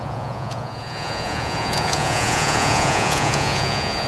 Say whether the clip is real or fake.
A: fake